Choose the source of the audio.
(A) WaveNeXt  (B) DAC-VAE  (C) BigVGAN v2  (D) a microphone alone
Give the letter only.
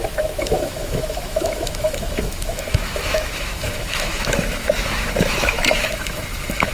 B